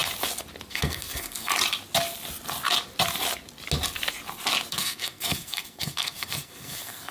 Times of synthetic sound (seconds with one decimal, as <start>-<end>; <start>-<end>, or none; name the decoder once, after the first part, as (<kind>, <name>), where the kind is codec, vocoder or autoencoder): 0.7-1.5 (codec, SNAC); 4.7-7.1